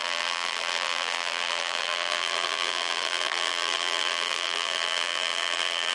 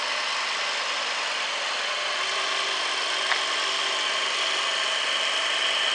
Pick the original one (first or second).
second